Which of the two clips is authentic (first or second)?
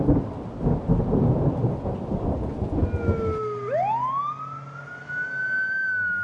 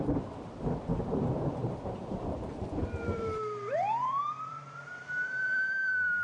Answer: first